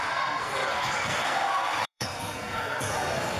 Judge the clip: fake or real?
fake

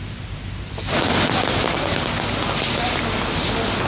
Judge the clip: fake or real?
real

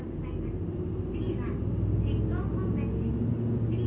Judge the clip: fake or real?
real